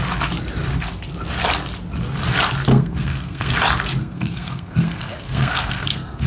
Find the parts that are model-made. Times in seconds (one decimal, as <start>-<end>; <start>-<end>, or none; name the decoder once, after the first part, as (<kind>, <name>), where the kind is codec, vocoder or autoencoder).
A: 2.7-3.5 (codec, SNAC); 4.0-6.3